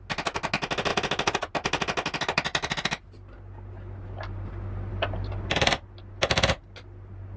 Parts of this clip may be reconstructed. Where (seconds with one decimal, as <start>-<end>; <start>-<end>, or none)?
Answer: none